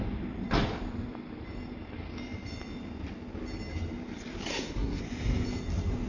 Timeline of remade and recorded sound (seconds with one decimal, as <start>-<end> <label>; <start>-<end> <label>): 0.0-4.5 recorded; 4.5-5.0 remade; 5.0-6.1 recorded